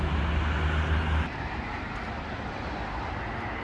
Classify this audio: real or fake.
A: real